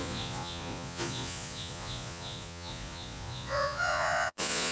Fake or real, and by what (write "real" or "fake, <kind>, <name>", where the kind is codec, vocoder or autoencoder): fake, vocoder, Vocos